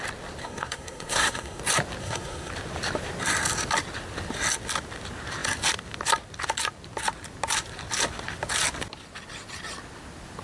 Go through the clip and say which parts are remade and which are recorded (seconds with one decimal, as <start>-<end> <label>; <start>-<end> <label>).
0.0-0.4 recorded; 0.4-1.6 remade; 1.6-2.0 recorded; 2.0-2.5 remade; 2.5-10.4 recorded